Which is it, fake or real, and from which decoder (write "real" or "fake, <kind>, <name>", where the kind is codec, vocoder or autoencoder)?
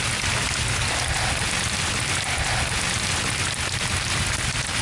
real